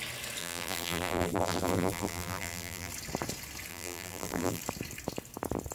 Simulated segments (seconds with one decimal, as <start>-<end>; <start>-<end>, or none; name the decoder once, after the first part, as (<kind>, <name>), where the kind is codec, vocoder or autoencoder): 0.4-2.9 (vocoder, BigVGAN v2); 3.7-4.6